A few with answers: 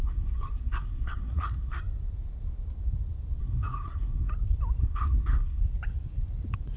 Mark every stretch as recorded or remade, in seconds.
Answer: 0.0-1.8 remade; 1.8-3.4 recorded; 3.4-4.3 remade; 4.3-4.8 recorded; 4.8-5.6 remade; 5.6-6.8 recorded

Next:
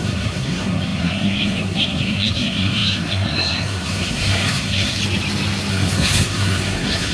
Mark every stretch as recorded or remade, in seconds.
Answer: 0.0-5.0 remade; 5.0-5.7 recorded; 5.7-7.1 remade